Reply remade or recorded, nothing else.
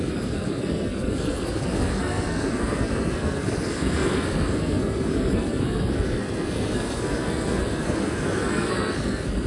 remade